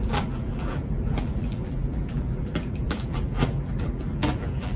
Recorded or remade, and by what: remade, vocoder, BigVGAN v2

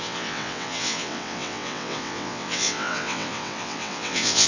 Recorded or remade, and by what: remade, vocoder, WaveNeXt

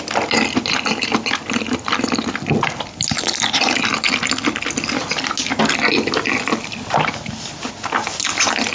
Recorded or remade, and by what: recorded